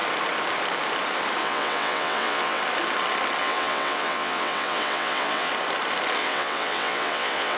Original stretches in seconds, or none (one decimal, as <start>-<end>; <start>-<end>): 0.0-1.4; 2.6-3.4; 5.5-6.2